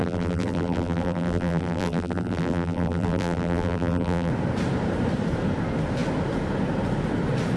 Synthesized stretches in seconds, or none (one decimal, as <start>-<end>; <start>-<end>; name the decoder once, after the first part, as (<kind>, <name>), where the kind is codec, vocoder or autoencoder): 0.0-4.3 (vocoder, BigVGAN v2)